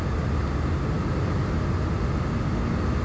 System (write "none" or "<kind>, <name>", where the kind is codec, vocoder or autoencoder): none